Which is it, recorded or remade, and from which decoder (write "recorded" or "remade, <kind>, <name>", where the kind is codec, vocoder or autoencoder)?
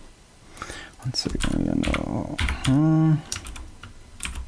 remade, vocoder, BigVGAN v2